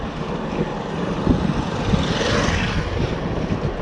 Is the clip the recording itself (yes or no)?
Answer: yes